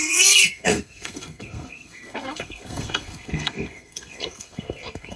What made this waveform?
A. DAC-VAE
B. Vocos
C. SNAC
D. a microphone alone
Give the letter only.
C